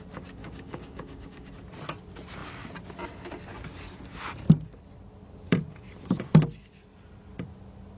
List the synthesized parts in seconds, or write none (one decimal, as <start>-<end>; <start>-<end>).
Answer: 0.4-1.5